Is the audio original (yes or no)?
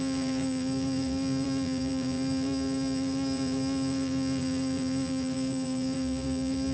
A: no